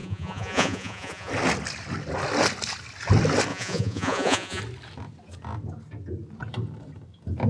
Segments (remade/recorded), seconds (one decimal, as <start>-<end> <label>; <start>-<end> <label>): 0.0-1.3 remade; 1.3-3.5 recorded; 3.5-4.6 remade; 4.6-7.5 recorded